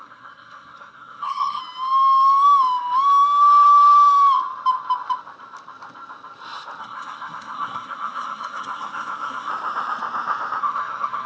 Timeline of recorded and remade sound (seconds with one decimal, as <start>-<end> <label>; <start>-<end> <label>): 0.0-1.6 remade; 1.6-6.8 recorded; 6.8-9.5 remade; 9.5-10.6 recorded; 10.6-11.3 remade